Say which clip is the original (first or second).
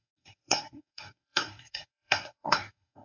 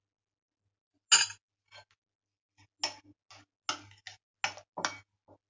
second